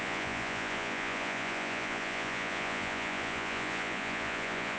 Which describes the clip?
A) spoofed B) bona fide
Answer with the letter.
A